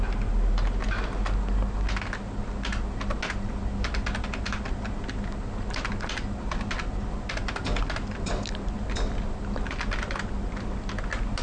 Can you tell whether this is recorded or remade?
recorded